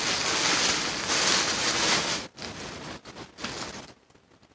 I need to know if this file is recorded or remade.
recorded